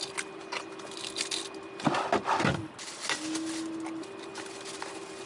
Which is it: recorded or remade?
recorded